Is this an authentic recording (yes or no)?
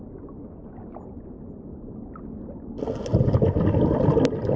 yes